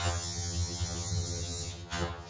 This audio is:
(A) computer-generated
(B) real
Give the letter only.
A